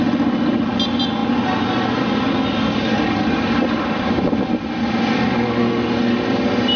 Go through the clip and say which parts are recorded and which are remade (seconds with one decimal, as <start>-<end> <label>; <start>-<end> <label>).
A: 0.0-6.8 recorded